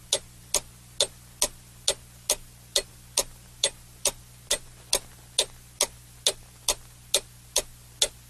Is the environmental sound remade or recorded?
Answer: recorded